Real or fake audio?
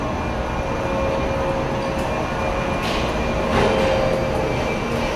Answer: real